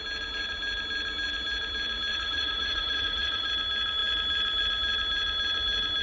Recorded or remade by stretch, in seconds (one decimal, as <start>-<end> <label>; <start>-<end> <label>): 0.0-2.1 recorded; 2.1-3.5 remade; 3.5-6.0 recorded